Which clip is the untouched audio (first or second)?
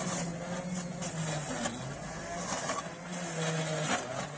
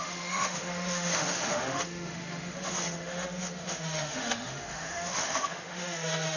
first